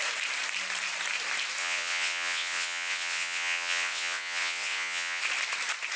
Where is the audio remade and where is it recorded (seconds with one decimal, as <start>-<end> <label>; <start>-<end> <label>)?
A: 0.0-1.6 recorded; 1.6-5.2 remade; 5.2-6.0 recorded